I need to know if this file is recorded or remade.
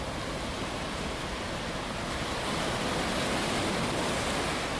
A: recorded